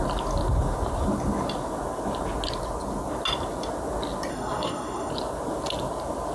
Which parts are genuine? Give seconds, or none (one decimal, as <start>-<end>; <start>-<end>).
0.0-4.3; 5.1-6.3